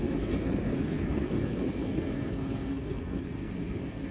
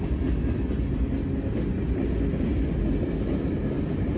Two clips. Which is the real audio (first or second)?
second